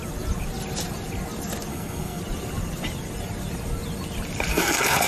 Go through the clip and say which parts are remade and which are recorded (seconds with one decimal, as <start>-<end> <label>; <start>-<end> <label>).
0.0-1.7 recorded; 1.7-2.2 remade; 2.2-4.5 recorded; 4.5-5.1 remade